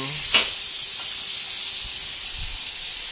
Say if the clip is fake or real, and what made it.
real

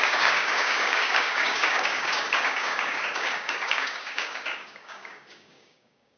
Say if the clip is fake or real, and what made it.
fake, codec, DAC